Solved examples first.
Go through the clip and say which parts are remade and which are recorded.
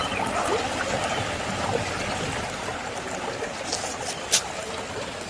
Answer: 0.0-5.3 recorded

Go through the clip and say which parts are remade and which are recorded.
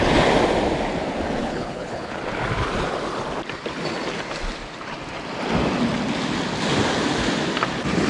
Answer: 0.0-1.4 recorded; 1.4-2.2 remade; 2.2-8.1 recorded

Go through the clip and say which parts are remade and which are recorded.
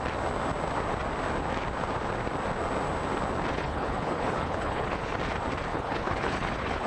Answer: 0.0-3.5 recorded; 3.5-5.2 remade; 5.2-5.7 recorded; 5.7-6.9 remade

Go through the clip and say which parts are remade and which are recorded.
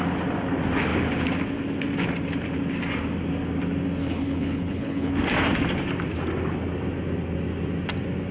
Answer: 0.0-4.0 recorded; 4.0-5.1 remade; 5.1-8.3 recorded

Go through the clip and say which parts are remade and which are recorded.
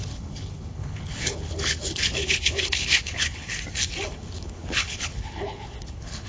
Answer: 0.0-3.5 remade; 3.5-4.1 recorded; 4.1-6.3 remade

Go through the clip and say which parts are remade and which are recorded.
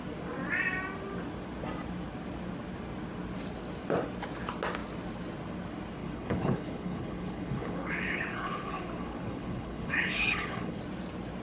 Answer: 0.0-6.0 recorded; 6.0-10.8 remade; 10.8-11.4 recorded